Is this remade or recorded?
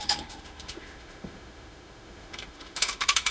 remade